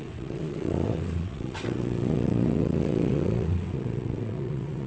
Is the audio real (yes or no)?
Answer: no